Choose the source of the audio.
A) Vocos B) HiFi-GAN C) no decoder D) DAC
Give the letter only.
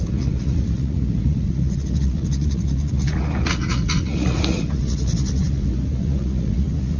A